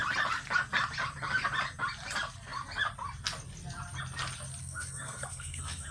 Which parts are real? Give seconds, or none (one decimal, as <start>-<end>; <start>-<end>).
0.0-4.6